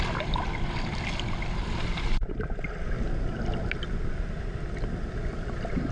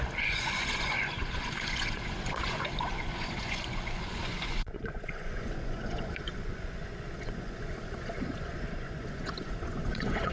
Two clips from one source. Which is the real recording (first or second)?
first